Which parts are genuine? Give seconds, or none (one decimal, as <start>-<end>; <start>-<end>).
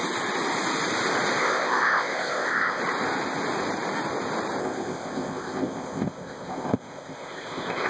0.0-1.4; 2.8-4.6